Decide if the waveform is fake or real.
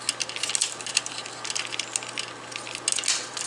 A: real